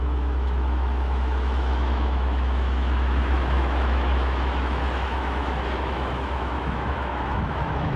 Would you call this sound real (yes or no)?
no